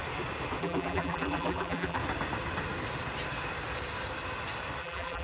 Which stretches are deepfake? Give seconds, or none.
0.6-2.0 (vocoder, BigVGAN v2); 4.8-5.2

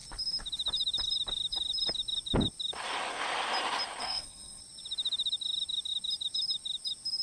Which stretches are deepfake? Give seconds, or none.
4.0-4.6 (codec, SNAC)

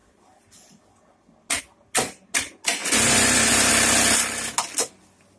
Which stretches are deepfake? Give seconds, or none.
2.8-3.7 (vocoder, Vocos)

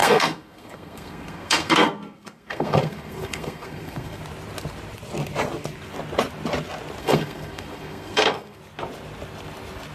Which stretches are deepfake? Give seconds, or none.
0.0-4.2 (codec, SNAC); 7.0-8.6